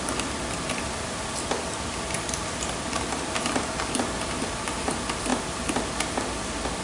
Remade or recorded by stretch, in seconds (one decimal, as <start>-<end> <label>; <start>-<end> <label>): 0.0-6.8 recorded